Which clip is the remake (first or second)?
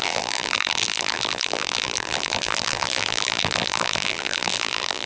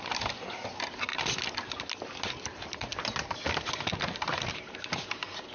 first